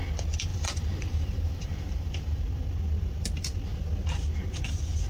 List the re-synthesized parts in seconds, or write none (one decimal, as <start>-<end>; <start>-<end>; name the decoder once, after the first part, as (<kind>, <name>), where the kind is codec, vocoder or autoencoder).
0.5-2.4 (vocoder, BigVGAN v2)